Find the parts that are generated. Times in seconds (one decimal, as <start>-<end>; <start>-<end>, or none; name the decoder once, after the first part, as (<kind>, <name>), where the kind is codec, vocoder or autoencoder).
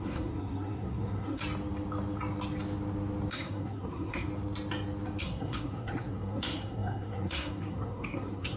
0.0-1.4 (codec, SNAC); 3.3-4.3; 5.2-8.6